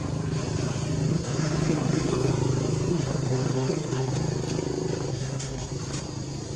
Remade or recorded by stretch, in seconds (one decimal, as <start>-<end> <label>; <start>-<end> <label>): 0.0-1.1 recorded; 1.1-2.3 remade; 2.3-2.9 recorded; 2.9-4.1 remade; 4.1-5.1 recorded; 5.1-5.7 remade; 5.7-6.6 recorded